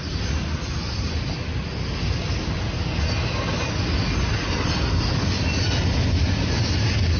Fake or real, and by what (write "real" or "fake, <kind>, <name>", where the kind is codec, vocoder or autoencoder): real